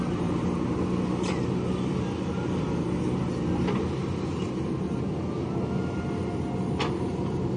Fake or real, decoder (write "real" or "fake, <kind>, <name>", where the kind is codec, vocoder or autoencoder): real